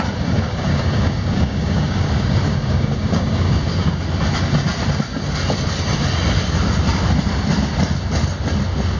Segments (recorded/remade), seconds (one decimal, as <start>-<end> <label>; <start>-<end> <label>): 0.0-0.5 recorded; 0.5-4.0 remade; 4.0-9.0 recorded